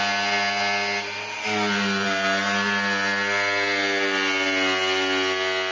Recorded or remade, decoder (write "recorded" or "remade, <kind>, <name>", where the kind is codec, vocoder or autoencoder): recorded